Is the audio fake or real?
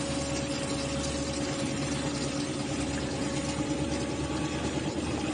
real